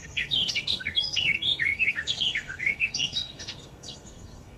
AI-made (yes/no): yes